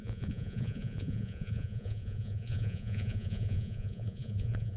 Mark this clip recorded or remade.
remade